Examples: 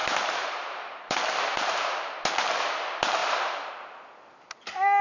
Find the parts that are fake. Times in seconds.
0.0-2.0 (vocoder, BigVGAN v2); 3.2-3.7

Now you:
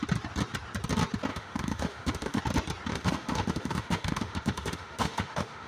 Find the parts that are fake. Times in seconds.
1.3-2.4 (autoencoder, DAC-VAE); 2.9-5.7